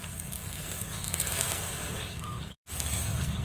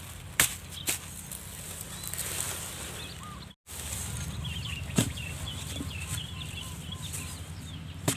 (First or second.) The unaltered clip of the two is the second